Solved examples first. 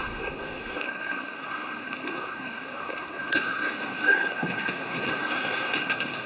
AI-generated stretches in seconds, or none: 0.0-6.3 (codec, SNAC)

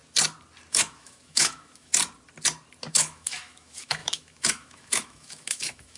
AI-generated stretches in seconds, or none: 0.7-1.9 (autoencoder, DAC-VAE); 2.9-6.0